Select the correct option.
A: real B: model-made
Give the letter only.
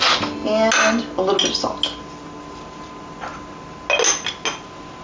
A